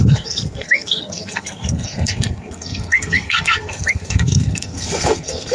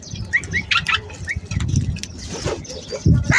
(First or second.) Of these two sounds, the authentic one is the second